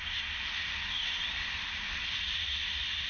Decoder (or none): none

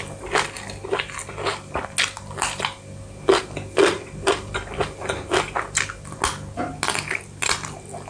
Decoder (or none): none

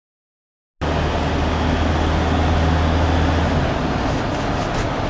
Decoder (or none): none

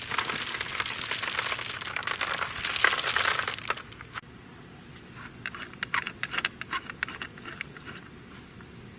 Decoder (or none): none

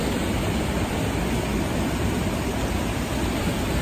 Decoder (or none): none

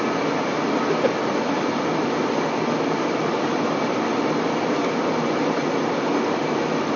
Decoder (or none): none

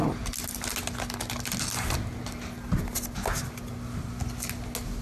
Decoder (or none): none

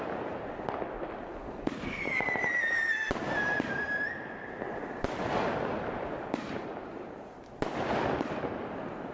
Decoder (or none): none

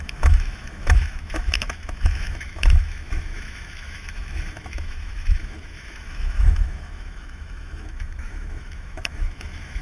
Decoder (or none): autoencoder, DAC-VAE